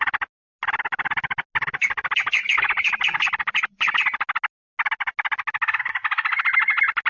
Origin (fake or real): real